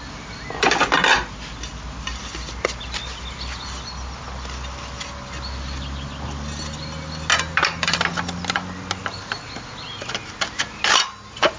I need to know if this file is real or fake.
real